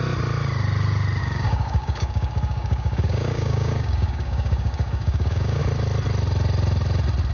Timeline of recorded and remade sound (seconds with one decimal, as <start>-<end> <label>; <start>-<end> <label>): 0.0-1.2 recorded; 1.2-5.6 remade; 5.6-7.3 recorded